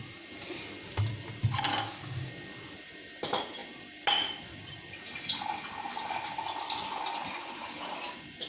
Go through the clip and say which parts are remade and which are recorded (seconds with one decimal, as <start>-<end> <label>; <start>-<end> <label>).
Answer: 0.0-1.7 recorded; 1.7-2.3 remade; 2.3-8.5 recorded